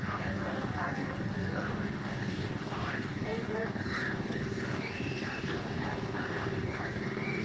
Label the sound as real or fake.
fake